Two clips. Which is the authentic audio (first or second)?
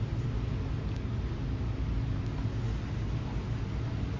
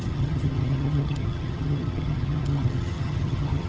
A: first